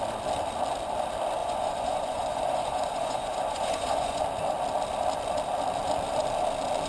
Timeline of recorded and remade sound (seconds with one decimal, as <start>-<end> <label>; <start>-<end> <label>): 0.0-1.4 recorded; 1.4-4.2 remade; 4.2-6.9 recorded